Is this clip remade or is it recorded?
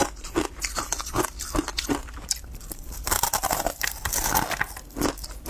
recorded